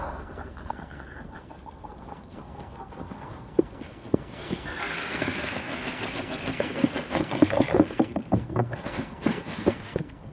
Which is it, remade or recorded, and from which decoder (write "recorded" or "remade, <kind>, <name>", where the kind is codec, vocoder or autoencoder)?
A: remade, codec, SNAC